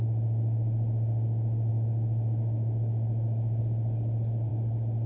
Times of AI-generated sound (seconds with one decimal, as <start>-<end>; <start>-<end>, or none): 1.7-3.6